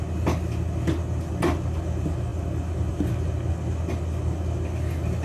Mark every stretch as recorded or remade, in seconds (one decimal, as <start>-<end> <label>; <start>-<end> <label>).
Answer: 0.0-5.2 recorded